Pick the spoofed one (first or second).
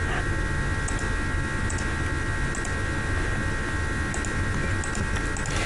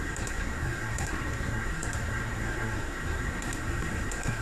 second